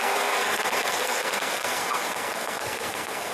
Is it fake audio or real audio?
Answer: fake